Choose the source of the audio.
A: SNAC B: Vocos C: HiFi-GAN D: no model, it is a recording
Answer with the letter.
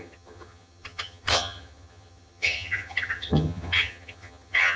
C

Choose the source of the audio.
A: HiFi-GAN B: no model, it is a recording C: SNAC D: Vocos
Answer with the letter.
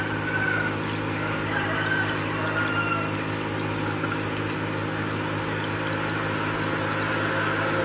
B